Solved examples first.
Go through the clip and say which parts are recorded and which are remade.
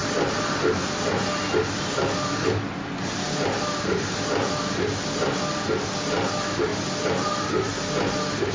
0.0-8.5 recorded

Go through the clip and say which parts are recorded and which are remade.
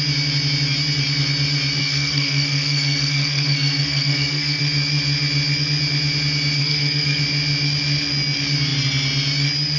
0.0-1.8 recorded; 1.8-4.6 remade; 4.6-6.6 recorded; 6.6-7.2 remade; 7.2-9.8 recorded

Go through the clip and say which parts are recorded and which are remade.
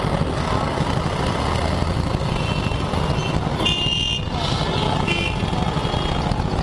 0.0-6.6 recorded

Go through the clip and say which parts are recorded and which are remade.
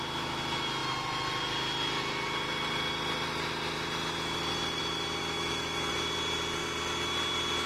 0.0-5.2 recorded; 5.2-5.9 remade; 5.9-7.7 recorded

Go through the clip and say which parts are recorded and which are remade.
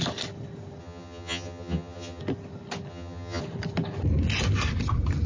0.0-0.8 recorded; 0.8-2.2 remade; 2.2-2.9 recorded; 2.9-3.4 remade; 3.4-5.3 recorded